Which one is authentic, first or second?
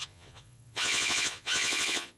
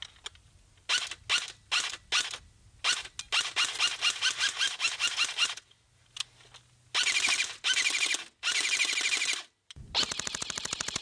second